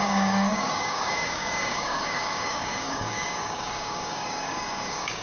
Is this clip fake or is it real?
fake